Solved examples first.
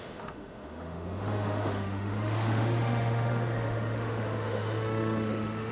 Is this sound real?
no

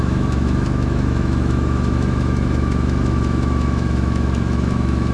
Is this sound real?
no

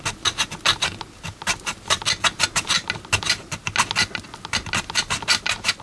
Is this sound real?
yes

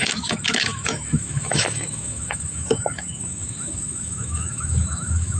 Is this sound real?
no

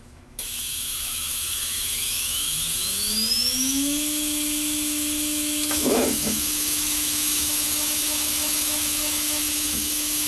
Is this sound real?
no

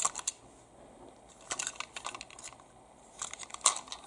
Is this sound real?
yes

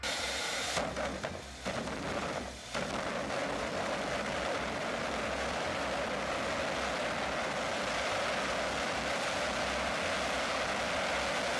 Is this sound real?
yes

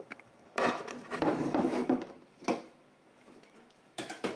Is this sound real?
no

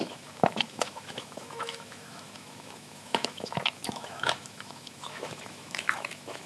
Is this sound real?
no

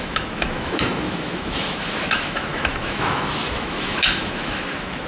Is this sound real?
no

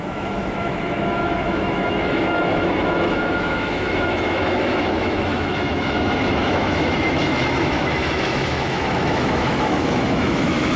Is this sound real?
no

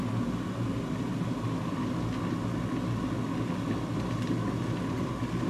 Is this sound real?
yes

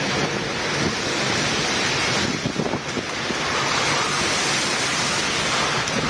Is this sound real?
yes